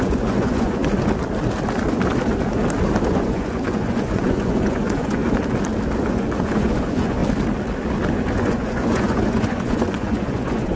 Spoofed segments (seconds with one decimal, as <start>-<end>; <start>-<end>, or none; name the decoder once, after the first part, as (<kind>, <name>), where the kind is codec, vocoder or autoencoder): 0.0-0.8 (vocoder, Vocos); 3.1-5.2; 6.1-7.2; 8.4-10.8

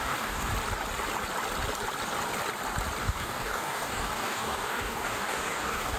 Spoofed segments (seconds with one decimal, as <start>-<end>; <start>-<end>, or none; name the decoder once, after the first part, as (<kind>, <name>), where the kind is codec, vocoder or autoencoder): 0.0-0.5 (codec, DAC); 3.0-6.0

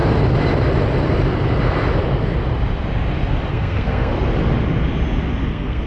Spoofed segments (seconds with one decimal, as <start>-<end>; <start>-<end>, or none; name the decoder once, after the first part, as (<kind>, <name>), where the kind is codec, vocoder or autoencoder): 3.5-4.1 (codec, SNAC); 5.5-5.9

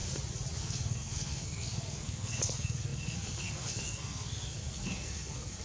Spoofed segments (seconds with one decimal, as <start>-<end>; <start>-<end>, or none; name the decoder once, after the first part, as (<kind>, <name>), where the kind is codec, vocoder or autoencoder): 0.6-5.6 (codec, SNAC)

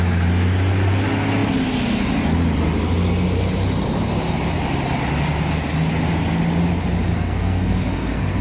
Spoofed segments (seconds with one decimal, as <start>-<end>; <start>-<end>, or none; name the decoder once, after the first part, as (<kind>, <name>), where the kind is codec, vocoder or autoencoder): 7.1-8.4 (codec, SNAC)

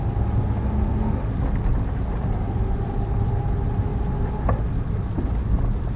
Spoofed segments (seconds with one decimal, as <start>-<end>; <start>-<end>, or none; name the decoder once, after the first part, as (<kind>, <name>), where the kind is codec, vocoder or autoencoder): 3.9-4.6 (vocoder, BigVGAN v2)